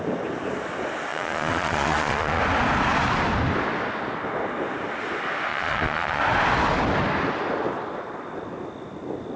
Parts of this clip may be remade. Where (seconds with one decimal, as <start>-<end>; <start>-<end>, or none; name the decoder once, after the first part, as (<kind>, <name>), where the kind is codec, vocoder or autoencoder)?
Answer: 1.1-2.4 (vocoder, Vocos); 5.5-6.2